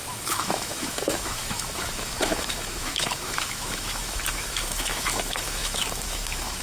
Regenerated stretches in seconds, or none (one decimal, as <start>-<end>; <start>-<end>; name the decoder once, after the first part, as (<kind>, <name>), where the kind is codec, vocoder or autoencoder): 0.0-6.6 (autoencoder, DAC-VAE)